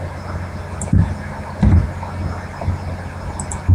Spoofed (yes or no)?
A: no